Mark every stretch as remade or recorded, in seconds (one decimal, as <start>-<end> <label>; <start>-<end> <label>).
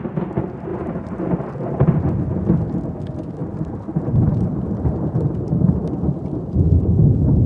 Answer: 0.0-0.7 recorded; 0.7-1.3 remade; 1.3-3.4 recorded; 3.4-7.0 remade; 7.0-7.5 recorded